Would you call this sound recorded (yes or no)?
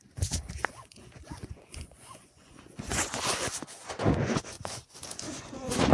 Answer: no